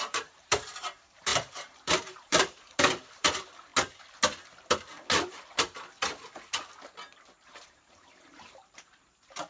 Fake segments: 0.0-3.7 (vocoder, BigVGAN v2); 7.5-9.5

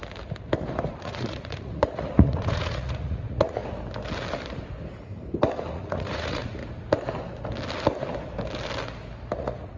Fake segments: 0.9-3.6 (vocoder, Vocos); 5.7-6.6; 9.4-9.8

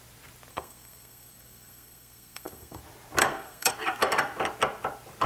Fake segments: 0.5-2.8 (codec, SNAC); 3.2-3.7

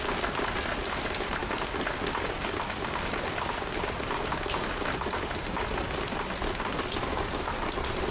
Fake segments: none